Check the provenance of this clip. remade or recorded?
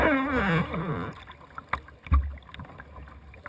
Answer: recorded